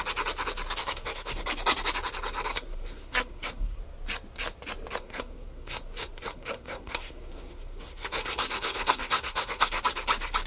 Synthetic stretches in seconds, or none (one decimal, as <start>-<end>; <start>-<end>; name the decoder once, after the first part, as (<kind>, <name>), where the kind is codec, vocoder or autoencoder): 0.8-1.4 (codec, SNAC); 2.5-3.8; 5.0-9.8